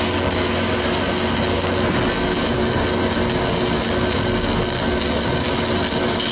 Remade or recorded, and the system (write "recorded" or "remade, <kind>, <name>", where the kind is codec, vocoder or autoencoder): recorded